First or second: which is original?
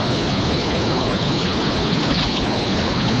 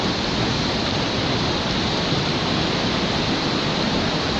second